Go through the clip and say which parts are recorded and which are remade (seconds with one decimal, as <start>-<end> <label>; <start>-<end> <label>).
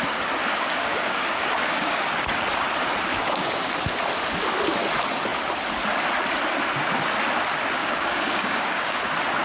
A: 0.0-0.4 recorded; 0.4-2.1 remade; 2.1-3.1 recorded; 3.1-3.7 remade; 3.7-7.8 recorded; 7.8-9.0 remade; 9.0-9.4 recorded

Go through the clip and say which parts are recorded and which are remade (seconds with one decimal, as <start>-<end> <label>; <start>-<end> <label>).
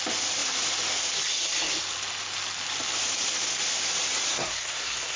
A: 0.0-4.3 recorded; 4.3-5.2 remade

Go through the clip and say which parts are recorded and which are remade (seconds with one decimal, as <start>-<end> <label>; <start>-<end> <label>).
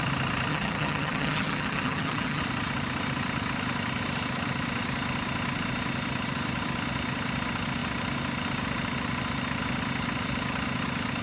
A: 0.0-0.5 recorded; 0.5-2.4 remade; 2.4-11.2 recorded